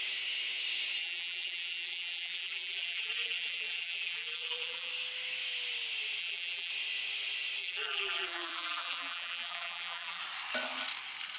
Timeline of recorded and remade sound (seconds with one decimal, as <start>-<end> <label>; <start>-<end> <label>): 0.0-1.0 recorded; 1.0-4.9 remade; 4.9-6.2 recorded; 6.2-6.7 remade; 6.7-7.6 recorded; 7.6-10.2 remade; 10.2-11.4 recorded